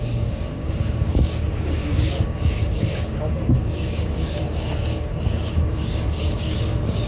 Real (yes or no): no